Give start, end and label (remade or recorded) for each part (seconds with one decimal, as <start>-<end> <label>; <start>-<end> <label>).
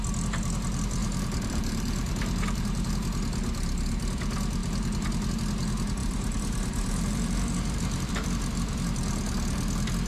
0.0-1.0 recorded; 1.0-2.9 remade; 2.9-6.0 recorded; 6.0-8.1 remade; 8.1-10.1 recorded